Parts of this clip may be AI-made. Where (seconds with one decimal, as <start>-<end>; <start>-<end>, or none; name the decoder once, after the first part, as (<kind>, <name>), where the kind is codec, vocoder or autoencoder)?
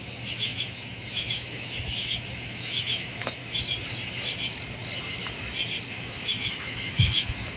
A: 0.0-3.4 (autoencoder, DAC-VAE); 5.9-7.6